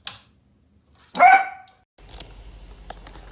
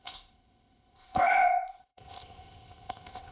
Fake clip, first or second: second